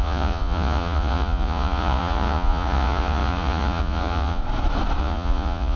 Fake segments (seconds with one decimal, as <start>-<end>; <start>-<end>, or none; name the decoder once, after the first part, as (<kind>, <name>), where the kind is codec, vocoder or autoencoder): 0.0-4.4 (vocoder, Vocos); 5.0-5.8